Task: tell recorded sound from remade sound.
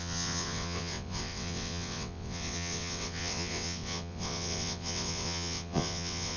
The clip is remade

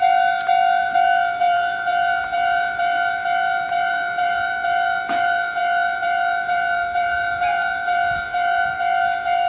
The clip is remade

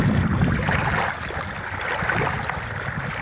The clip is recorded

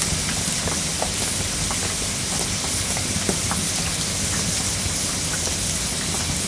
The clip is recorded